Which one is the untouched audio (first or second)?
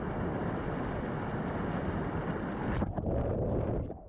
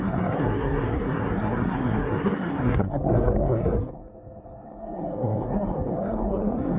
first